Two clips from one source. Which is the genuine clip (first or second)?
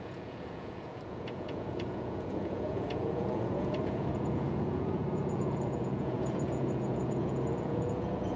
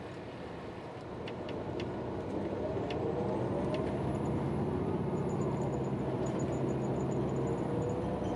second